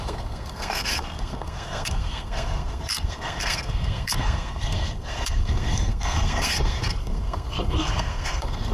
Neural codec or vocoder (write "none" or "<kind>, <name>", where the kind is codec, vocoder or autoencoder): codec, SNAC